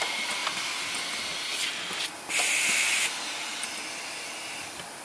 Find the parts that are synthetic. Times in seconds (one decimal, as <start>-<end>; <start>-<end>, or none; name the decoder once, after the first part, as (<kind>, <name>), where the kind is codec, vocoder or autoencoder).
none